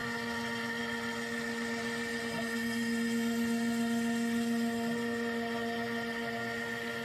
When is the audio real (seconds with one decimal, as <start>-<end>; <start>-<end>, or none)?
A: 0.0-7.0